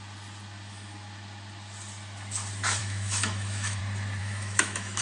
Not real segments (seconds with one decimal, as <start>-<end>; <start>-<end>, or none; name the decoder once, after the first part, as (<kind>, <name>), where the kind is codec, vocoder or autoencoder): 2.8-3.8 (autoencoder, DAC-VAE); 4.2-5.0